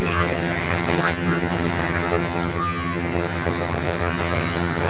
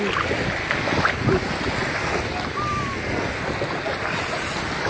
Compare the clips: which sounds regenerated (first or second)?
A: first